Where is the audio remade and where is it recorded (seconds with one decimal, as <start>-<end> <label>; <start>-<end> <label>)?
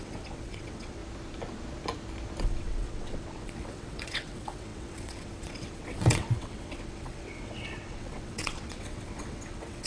0.0-1.0 remade; 1.0-2.4 recorded; 2.4-9.9 remade